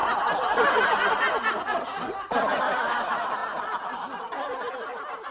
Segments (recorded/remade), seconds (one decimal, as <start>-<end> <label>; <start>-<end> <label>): 0.0-5.3 recorded